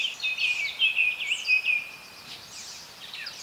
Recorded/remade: recorded